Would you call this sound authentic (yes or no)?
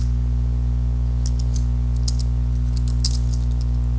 yes